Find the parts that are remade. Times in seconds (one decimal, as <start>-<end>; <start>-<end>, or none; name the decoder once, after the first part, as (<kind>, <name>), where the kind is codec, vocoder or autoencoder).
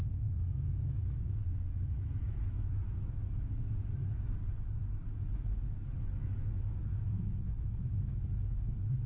0.0-4.1 (autoencoder, DAC-VAE); 5.6-9.1